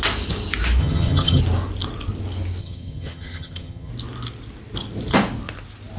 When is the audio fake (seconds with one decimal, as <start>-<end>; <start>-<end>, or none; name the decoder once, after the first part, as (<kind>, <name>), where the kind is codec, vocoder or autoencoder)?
0.8-1.4 (vocoder, HiFi-GAN); 2.6-3.9